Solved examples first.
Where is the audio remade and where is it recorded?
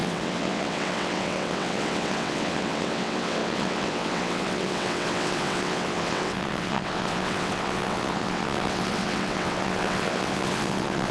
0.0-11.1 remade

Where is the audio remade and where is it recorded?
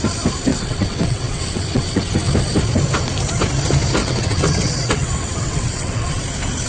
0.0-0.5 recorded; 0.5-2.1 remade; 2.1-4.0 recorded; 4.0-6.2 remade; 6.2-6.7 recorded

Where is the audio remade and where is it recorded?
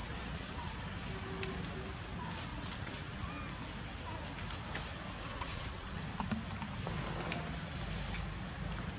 0.0-0.7 remade; 0.7-2.5 recorded; 2.5-3.3 remade; 3.3-5.3 recorded; 5.3-6.0 remade; 6.0-9.0 recorded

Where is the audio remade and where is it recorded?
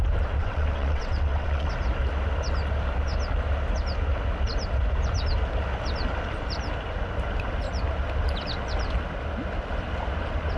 0.0-0.4 recorded; 0.4-1.7 remade; 1.7-10.6 recorded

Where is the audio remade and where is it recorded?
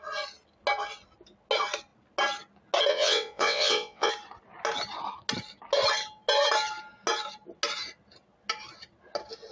0.0-2.9 recorded; 2.9-4.1 remade; 4.1-9.5 recorded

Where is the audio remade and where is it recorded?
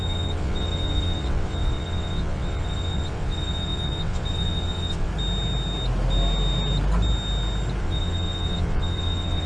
0.0-5.1 remade; 5.1-7.8 recorded; 7.8-9.5 remade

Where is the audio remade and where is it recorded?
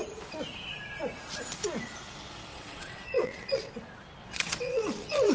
0.0-2.5 recorded; 2.5-3.7 remade; 3.7-4.2 recorded; 4.2-5.3 remade